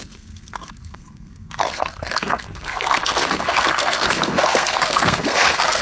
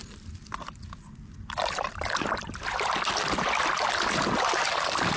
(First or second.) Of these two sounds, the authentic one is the second